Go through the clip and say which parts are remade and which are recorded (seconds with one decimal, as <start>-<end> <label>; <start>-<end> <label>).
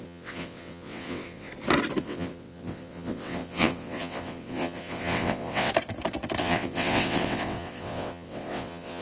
0.0-1.5 remade; 1.5-2.0 recorded; 2.0-5.7 remade; 5.7-6.4 recorded; 6.4-9.0 remade